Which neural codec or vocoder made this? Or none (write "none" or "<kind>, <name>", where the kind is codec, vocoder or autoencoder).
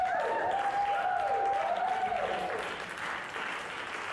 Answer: none